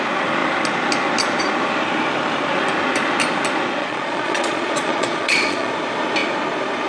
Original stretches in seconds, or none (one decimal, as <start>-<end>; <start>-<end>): 0.0-3.8; 5.7-6.9